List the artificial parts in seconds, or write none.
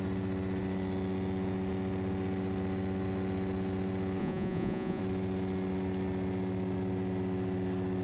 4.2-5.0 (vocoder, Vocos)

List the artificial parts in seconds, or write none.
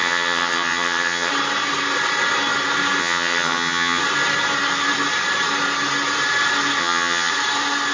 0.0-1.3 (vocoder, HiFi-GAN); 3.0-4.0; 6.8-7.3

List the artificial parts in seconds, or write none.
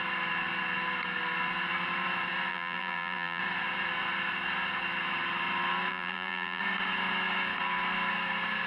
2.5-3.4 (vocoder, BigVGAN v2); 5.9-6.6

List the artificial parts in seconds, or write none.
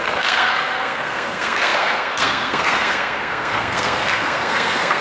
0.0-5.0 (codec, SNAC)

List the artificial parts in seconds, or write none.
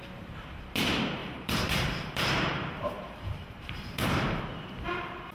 1.2-4.4 (vocoder, BigVGAN v2)